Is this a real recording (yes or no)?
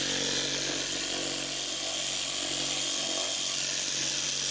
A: yes